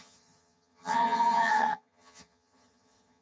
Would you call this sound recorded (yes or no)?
no